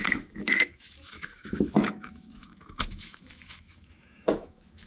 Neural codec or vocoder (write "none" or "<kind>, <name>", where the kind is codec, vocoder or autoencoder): autoencoder, DAC-VAE